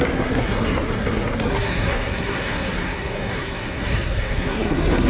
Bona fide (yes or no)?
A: no